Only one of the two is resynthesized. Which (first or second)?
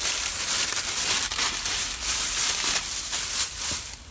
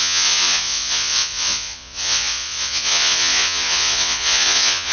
second